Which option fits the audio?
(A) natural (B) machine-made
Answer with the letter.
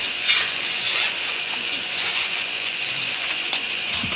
B